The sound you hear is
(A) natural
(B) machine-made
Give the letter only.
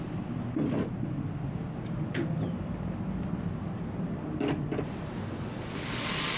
A